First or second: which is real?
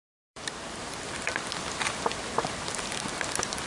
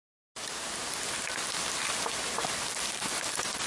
second